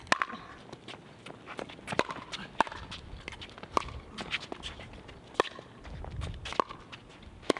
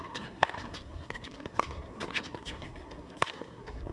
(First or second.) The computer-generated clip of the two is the second